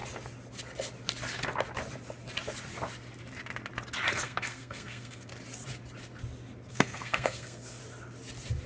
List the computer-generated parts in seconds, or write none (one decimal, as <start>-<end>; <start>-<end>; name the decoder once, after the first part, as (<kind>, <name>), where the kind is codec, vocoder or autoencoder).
4.1-5.3 (codec, SNAC); 6.7-7.8